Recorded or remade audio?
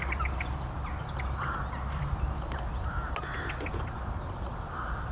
recorded